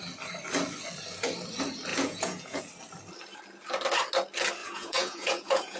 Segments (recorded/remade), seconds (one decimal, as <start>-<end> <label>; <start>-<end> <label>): 0.0-1.9 recorded; 1.9-2.6 remade; 2.6-4.6 recorded; 4.6-5.8 remade